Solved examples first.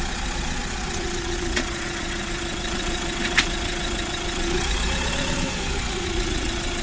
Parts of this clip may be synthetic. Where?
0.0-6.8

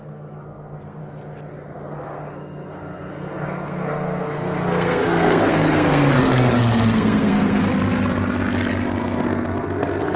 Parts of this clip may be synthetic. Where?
0.0-1.0; 1.5-7.6; 9.0-10.2

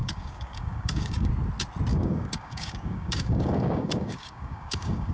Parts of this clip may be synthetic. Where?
0.0-1.3; 1.9-5.1

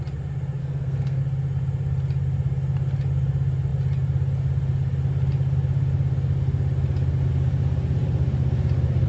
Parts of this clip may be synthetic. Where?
0.6-1.2

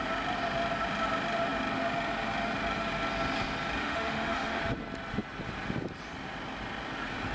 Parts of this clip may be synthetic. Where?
3.8-4.6

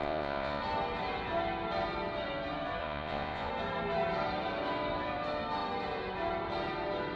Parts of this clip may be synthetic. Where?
0.0-0.6; 2.8-3.5